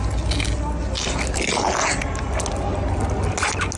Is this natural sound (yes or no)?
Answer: yes